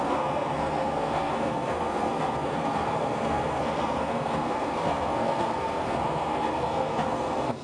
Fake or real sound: fake